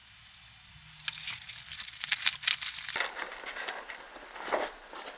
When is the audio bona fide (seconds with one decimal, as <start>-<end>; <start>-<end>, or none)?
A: 0.0-5.2